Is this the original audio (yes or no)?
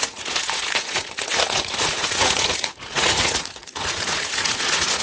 no